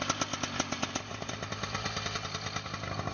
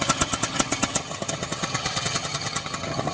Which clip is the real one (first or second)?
first